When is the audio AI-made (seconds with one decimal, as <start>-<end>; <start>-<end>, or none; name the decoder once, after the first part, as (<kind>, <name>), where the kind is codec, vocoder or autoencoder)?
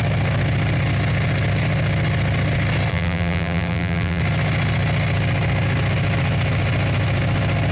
2.9-4.2 (vocoder, BigVGAN v2)